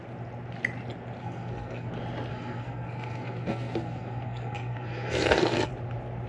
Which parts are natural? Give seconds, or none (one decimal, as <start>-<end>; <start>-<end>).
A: 0.0-1.2; 1.9-2.3; 5.7-6.3